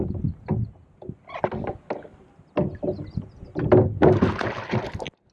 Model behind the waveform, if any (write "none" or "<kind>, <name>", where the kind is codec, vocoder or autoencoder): none